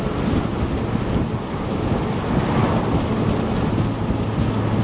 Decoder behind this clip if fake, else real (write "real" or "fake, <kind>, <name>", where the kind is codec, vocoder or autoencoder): real